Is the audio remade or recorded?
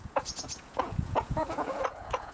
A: remade